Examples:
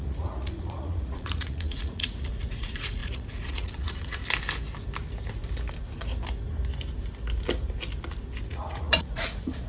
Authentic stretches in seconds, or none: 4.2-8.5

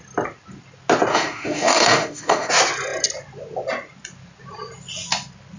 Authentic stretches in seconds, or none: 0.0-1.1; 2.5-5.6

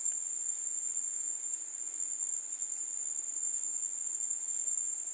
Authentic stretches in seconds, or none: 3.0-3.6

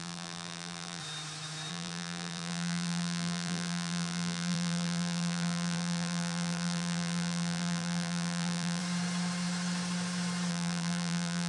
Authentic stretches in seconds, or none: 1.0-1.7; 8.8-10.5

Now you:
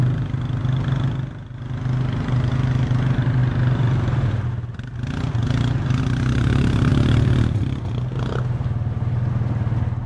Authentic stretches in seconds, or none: 0.0-10.1

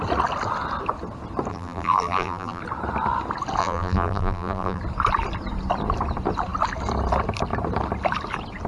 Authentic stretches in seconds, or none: 0.0-1.5; 2.6-3.6; 4.8-8.7